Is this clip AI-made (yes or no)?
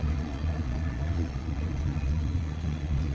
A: yes